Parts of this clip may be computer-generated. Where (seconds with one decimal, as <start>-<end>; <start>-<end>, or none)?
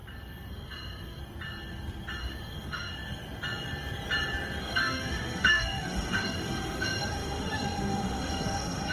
0.5-1.2; 2.2-2.9; 4.6-8.9